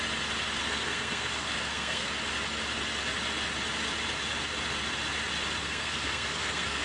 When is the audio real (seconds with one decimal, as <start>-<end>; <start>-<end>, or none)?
0.0-0.6; 2.1-5.6